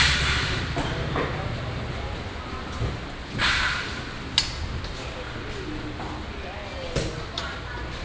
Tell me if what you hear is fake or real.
real